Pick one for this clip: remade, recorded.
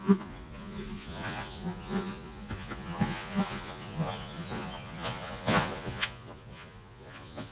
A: remade